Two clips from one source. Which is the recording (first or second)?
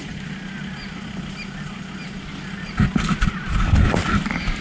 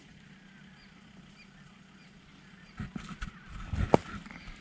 first